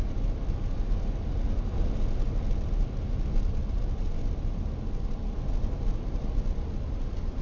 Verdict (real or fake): real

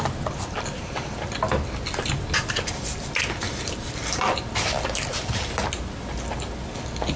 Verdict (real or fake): real